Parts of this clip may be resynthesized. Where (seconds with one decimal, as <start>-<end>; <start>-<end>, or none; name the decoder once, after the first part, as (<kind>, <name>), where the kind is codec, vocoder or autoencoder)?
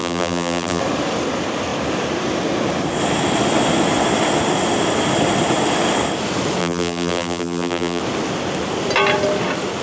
0.0-0.8 (vocoder, BigVGAN v2); 6.6-8.0